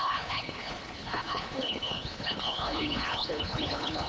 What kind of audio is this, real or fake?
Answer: fake